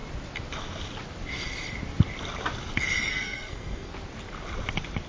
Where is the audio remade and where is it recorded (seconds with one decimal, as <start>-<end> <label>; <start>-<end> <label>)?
0.0-3.1 recorded; 3.1-3.9 remade; 3.9-5.1 recorded